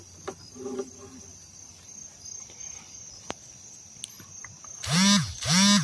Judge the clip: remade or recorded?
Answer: recorded